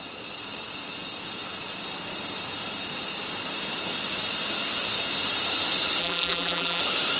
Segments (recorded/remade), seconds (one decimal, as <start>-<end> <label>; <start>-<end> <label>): 0.0-6.0 recorded; 6.0-6.8 remade; 6.8-7.2 recorded